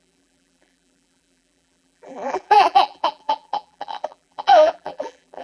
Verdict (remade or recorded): remade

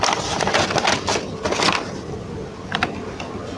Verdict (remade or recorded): recorded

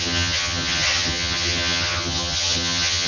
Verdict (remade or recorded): remade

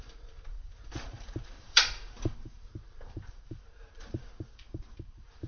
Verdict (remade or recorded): remade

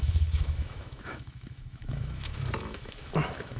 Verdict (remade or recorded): remade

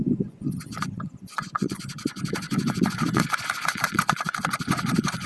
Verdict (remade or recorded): remade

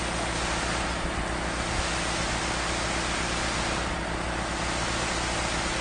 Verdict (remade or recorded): recorded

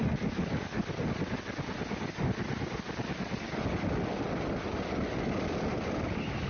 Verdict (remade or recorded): recorded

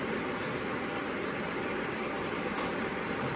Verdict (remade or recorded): remade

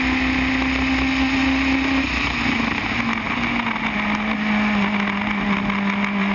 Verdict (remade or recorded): recorded